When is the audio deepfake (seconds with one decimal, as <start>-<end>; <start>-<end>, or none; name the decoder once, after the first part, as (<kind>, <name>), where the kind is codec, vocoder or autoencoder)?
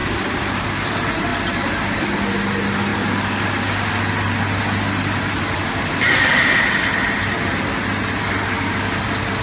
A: none